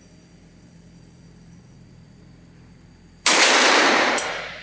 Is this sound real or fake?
fake